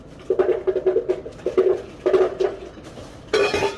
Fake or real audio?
real